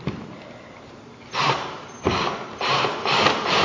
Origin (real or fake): fake